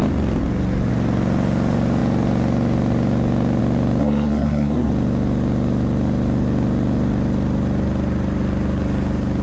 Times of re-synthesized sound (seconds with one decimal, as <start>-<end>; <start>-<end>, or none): 4.0-4.9